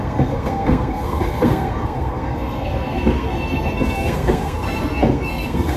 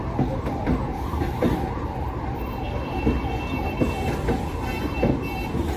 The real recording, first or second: second